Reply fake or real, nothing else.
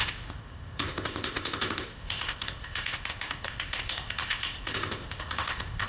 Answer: fake